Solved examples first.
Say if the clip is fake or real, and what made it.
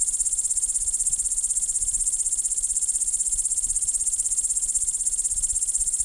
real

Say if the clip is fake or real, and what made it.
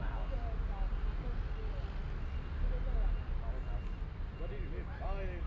real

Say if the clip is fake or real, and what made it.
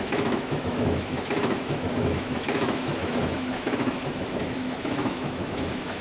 fake, autoencoder, DAC-VAE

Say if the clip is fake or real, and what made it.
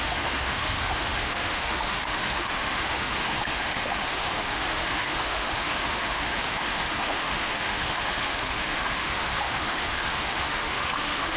fake, autoencoder, DAC-VAE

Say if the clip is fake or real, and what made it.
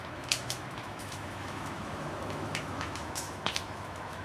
fake, autoencoder, DAC-VAE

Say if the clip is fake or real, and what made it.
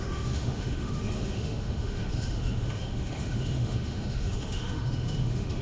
fake, autoencoder, DAC-VAE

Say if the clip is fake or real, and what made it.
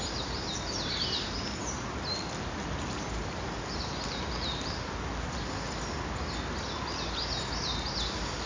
real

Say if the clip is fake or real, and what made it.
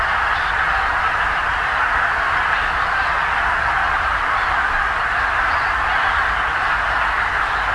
real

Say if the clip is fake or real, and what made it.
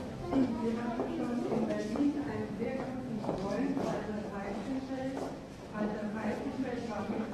fake, autoencoder, DAC-VAE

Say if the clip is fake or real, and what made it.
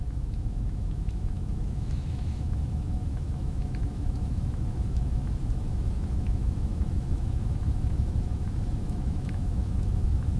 fake, autoencoder, DAC-VAE